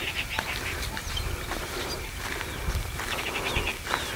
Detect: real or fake real